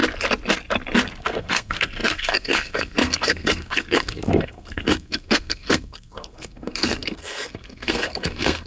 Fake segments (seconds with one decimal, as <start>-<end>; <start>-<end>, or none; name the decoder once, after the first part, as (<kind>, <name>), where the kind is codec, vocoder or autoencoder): 1.2-8.7 (codec, SNAC)